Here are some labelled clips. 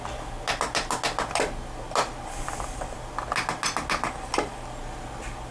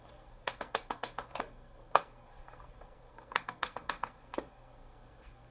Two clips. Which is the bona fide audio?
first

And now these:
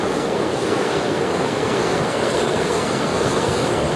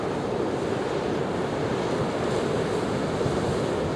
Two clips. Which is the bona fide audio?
second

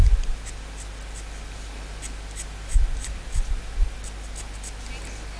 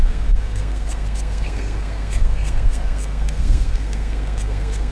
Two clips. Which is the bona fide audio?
first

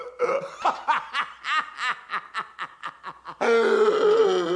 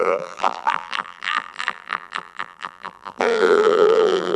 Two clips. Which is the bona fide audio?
first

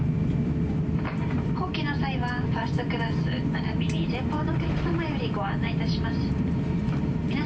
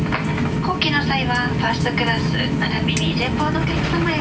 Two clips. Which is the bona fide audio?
second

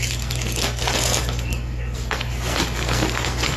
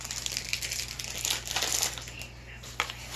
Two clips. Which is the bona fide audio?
second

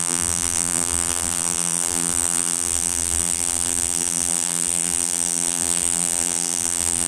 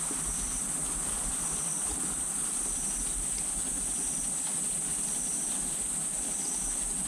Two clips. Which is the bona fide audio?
second